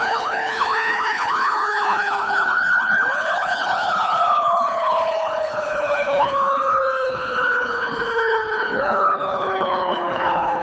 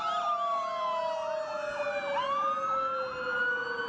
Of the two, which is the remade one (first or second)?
first